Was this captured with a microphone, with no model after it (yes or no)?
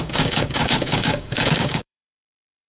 no